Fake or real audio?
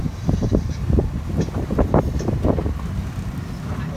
real